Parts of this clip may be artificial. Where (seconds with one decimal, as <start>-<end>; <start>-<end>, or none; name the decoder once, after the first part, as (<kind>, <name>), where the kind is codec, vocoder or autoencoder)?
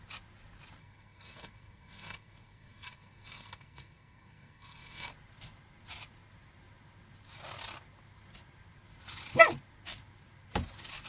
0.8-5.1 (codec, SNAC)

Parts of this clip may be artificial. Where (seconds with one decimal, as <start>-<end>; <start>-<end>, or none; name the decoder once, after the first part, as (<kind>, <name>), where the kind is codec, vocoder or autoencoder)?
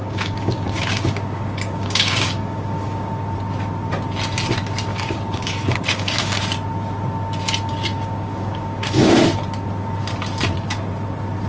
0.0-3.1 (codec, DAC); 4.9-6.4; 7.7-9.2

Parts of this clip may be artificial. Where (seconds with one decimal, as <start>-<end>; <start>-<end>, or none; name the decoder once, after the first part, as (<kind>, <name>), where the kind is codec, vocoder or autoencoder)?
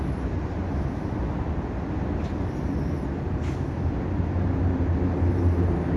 0.6-1.2 (vocoder, BigVGAN v2)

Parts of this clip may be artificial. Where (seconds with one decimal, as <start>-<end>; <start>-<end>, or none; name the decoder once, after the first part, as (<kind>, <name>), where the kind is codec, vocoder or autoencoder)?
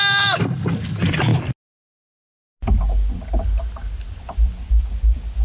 none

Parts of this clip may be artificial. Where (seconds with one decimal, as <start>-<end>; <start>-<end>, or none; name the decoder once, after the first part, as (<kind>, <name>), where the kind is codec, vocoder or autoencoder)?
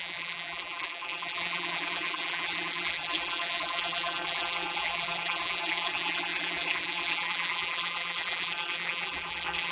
0.0-9.7 (vocoder, BigVGAN v2)